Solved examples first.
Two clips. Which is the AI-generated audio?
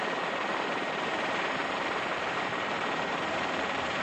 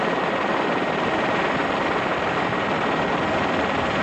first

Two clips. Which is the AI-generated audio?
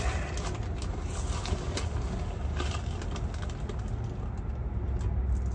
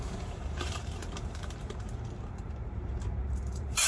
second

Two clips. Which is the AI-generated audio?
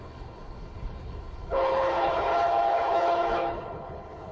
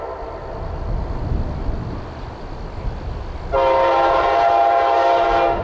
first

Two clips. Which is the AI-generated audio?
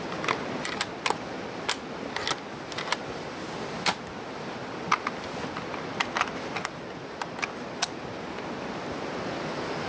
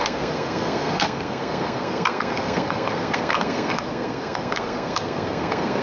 second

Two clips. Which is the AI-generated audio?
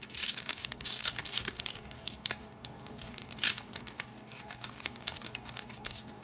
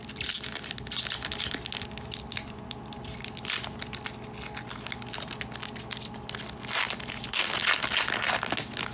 first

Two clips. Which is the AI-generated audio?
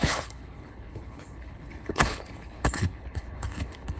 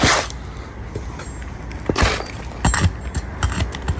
first